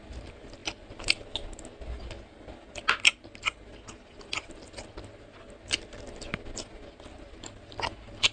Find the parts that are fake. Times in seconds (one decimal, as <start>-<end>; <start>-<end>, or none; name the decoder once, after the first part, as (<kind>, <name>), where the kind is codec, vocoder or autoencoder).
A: none